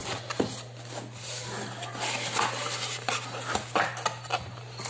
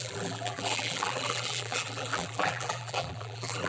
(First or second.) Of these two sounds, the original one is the first